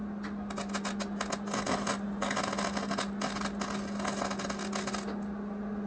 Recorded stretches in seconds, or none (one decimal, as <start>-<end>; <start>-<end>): 0.0-5.9